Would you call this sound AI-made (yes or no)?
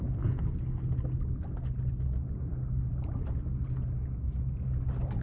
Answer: no